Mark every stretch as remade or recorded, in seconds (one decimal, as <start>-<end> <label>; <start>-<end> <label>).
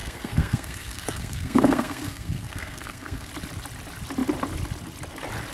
0.0-3.3 remade; 3.3-5.5 recorded